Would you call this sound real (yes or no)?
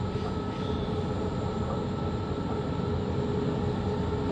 yes